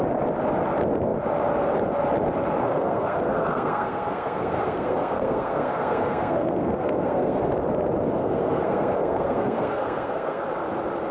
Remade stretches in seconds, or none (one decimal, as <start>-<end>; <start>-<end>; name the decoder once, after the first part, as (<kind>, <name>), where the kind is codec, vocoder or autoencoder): 2.6-7.4 (codec, SNAC); 8.2-10.4